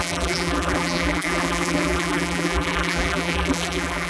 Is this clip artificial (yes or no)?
yes